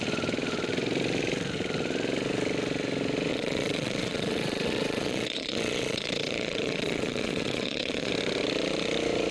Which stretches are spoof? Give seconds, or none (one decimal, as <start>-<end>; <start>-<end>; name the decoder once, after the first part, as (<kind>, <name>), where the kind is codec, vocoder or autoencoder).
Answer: 3.3-8.1 (vocoder, Vocos)